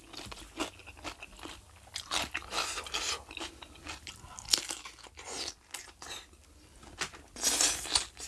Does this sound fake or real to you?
real